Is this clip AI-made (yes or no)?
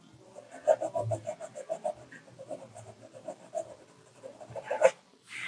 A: no